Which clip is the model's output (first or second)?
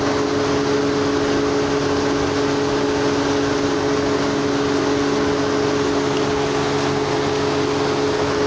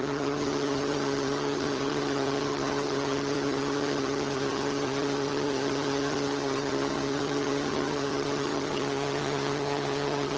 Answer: second